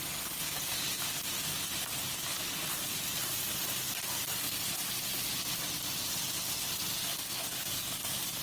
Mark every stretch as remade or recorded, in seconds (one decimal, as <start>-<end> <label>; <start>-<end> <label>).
0.0-7.0 recorded; 7.0-8.4 remade